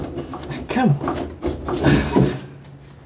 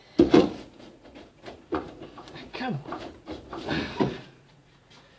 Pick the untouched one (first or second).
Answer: first